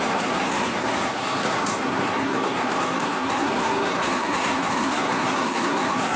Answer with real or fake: fake